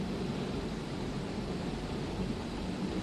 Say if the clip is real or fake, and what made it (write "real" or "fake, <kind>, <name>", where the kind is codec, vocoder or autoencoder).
real